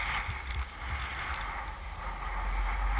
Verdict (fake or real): real